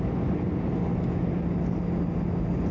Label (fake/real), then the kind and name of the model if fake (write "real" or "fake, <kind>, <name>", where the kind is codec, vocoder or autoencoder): real